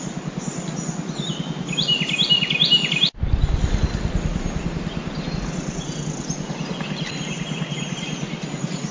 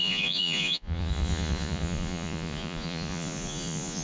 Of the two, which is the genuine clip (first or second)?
first